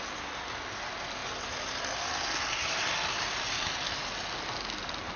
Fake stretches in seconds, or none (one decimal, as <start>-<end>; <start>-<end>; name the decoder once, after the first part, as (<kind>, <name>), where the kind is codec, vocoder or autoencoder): none